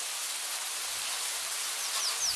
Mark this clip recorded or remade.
recorded